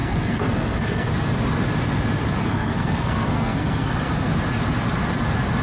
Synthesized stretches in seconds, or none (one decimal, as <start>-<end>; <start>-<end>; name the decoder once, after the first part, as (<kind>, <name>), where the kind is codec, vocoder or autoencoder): 0.0-1.1 (codec, SNAC); 2.4-4.3